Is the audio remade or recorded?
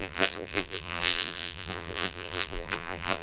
remade